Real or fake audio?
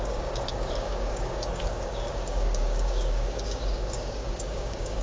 fake